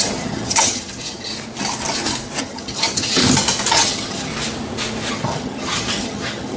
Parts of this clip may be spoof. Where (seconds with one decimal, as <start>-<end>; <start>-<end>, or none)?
0.0-1.3; 2.4-3.2; 3.7-4.3; 5.1-6.6

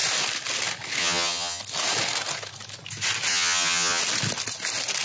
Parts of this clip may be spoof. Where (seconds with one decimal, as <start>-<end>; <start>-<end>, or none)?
1.0-1.6; 3.3-4.0

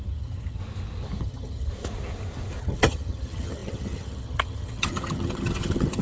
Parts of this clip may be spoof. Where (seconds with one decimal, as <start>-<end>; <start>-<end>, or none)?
0.0-0.6; 1.2-1.7; 2.6-6.0

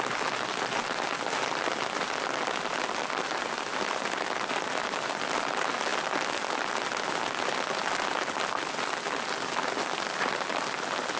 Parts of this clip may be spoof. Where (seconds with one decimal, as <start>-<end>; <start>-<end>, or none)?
none

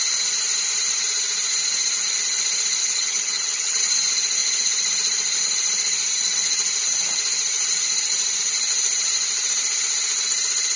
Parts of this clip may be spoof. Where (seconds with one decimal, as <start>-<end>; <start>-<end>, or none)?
2.8-3.8

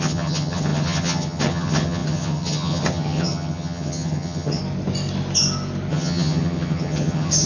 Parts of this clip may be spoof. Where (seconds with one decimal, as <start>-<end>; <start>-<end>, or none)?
0.0-4.6; 5.9-7.5